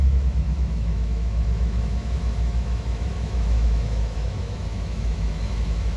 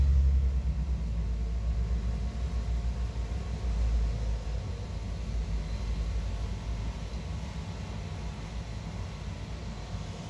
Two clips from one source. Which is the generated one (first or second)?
first